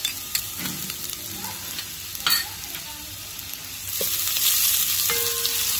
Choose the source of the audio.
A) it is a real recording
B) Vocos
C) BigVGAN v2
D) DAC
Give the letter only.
A